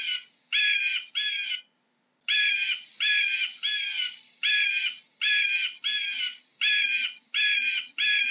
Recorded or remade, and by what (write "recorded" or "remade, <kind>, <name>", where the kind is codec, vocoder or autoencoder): recorded